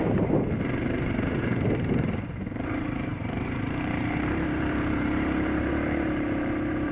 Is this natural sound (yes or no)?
no